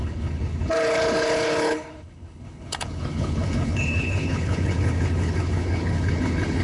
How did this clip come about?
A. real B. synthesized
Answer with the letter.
B